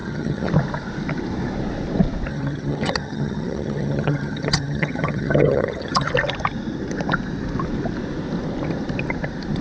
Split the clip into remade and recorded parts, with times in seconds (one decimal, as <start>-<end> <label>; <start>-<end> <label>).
0.0-0.5 remade; 0.5-2.3 recorded; 2.3-6.1 remade; 6.1-9.6 recorded